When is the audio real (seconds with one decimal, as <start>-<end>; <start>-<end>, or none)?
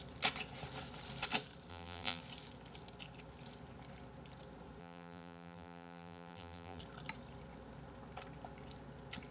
0.0-1.7; 2.2-4.8; 6.8-9.3